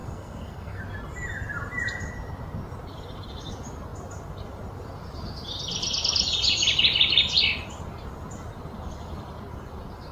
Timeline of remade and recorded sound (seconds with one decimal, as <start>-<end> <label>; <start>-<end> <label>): 0.0-0.8 remade; 0.8-10.1 recorded